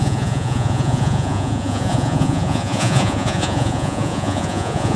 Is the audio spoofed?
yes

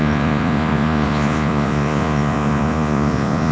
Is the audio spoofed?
yes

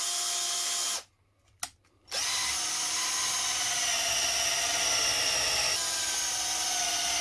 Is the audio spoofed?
no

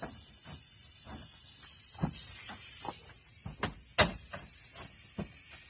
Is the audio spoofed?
no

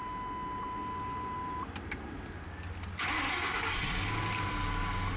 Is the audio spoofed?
no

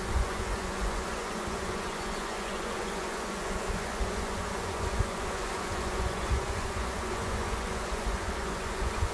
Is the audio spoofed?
yes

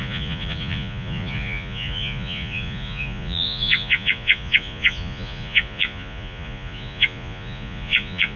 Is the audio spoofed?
yes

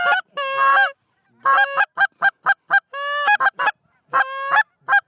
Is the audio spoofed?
no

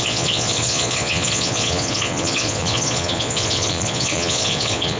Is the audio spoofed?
yes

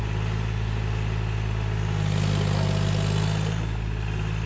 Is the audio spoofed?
no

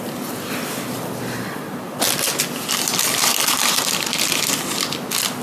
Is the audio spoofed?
no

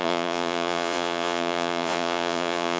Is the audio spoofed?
yes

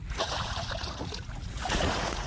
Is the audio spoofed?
yes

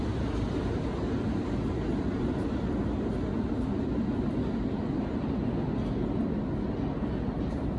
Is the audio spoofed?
no